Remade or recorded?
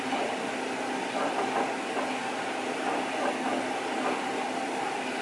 recorded